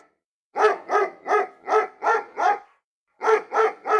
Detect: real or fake real